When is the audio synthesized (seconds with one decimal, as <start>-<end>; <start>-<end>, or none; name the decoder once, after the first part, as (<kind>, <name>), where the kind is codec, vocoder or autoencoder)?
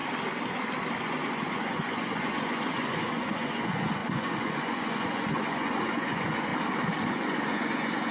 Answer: 1.0-6.5 (vocoder, Vocos); 7.1-8.1